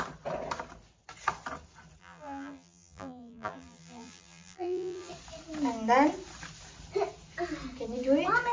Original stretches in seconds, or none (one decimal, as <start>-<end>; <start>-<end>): 0.0-2.0; 5.1-8.5